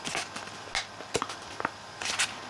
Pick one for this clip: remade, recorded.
recorded